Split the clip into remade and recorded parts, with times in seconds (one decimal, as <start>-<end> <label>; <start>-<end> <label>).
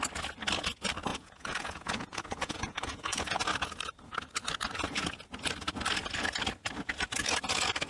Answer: 0.0-1.1 recorded; 1.1-3.4 remade; 3.4-7.9 recorded